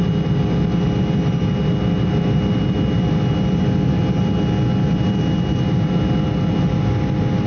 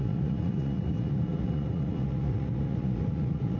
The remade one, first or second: second